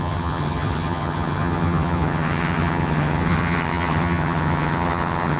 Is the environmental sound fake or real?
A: fake